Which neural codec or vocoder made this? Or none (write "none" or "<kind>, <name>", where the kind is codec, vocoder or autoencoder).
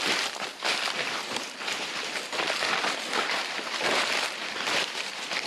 vocoder, BigVGAN v2